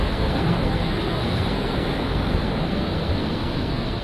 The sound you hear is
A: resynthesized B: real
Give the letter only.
A